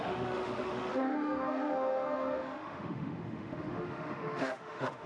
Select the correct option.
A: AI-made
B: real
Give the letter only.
A